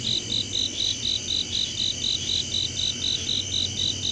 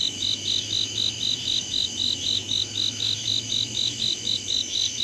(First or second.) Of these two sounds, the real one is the first